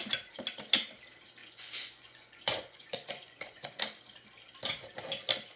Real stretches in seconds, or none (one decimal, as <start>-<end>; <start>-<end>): 0.0-1.4; 3.8-5.6